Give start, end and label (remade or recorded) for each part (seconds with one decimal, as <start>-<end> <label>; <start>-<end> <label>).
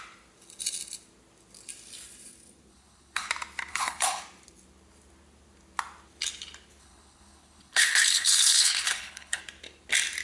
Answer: 0.0-2.7 recorded; 2.7-3.3 remade; 3.3-3.7 recorded; 3.7-4.2 remade; 4.2-6.8 recorded; 6.8-9.4 remade; 9.4-10.2 recorded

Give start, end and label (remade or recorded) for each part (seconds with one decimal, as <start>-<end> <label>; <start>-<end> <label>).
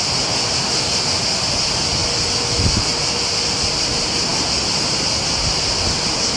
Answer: 0.0-6.4 recorded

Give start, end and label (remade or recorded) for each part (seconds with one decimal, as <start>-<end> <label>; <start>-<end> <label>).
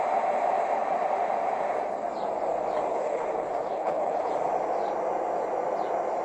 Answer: 0.0-2.9 recorded; 2.9-4.3 remade; 4.3-6.2 recorded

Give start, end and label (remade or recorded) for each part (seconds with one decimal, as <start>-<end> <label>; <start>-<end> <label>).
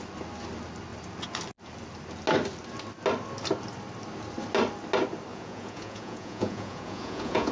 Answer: 0.0-5.3 recorded; 5.3-7.5 remade